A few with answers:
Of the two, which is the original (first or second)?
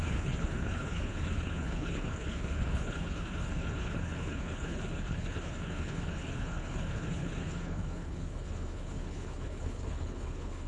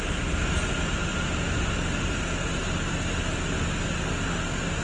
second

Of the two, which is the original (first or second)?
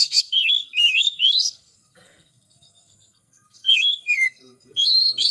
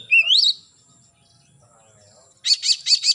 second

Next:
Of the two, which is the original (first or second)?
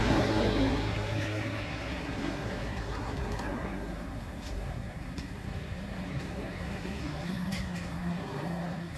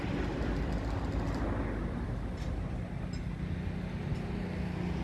second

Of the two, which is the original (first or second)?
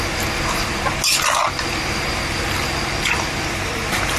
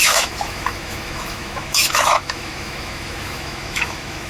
first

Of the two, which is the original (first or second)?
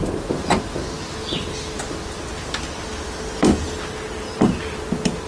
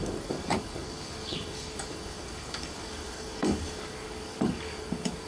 first